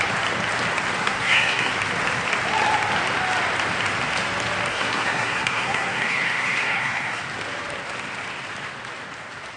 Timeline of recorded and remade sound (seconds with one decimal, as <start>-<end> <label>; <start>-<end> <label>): 0.0-1.0 recorded; 1.0-1.7 remade; 1.7-4.7 recorded; 4.7-7.2 remade; 7.2-9.6 recorded